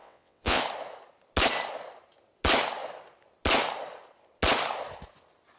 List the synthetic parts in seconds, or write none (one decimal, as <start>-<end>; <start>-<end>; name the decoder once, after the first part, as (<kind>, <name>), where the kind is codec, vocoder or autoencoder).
0.0-0.6 (vocoder, WaveNeXt)